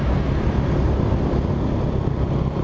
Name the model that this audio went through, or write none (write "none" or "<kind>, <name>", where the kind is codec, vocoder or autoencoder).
none